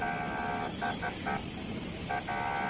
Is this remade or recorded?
recorded